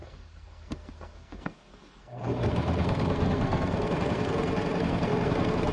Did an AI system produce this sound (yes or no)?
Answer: yes